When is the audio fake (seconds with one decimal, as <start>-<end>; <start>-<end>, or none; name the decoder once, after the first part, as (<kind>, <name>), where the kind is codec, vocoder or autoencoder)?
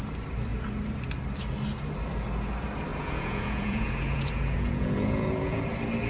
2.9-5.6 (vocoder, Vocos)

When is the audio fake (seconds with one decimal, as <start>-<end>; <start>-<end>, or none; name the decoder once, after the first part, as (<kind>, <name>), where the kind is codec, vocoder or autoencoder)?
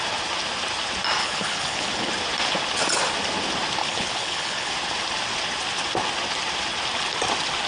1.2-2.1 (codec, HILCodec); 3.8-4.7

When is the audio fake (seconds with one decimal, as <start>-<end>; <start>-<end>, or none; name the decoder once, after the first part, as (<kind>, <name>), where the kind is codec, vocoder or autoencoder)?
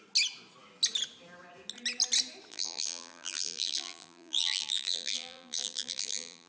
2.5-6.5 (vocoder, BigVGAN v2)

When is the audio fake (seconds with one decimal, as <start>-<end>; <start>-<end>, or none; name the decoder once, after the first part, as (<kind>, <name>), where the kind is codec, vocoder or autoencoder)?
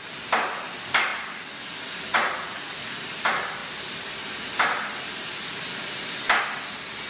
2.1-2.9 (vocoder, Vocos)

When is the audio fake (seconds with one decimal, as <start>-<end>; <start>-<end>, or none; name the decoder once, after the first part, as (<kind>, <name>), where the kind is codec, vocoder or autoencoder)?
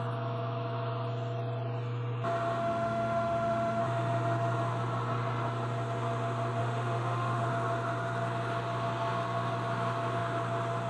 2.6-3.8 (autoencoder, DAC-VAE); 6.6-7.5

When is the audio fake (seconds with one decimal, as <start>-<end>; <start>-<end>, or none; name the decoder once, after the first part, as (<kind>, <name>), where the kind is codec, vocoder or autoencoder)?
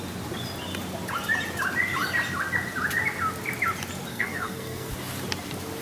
4.1-4.9 (codec, SNAC)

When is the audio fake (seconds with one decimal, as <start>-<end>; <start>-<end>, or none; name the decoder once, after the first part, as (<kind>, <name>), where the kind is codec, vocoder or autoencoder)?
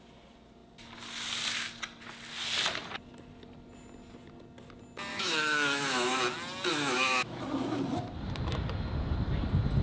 5.1-6.2 (autoencoder, DAC-VAE); 6.7-7.4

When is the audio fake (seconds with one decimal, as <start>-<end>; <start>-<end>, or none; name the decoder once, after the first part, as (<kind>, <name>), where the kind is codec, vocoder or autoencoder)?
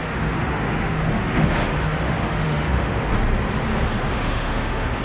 0.0-3.0 (autoencoder, DAC-VAE); 4.1-5.0